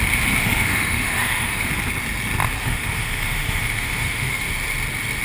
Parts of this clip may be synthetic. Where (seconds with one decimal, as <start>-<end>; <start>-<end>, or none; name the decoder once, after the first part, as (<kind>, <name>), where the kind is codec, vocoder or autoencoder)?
0.4-1.7 (autoencoder, DAC-VAE); 2.6-4.4